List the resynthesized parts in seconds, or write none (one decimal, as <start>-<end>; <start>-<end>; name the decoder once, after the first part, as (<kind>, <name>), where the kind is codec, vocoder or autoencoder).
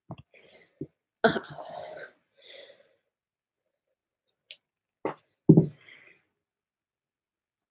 none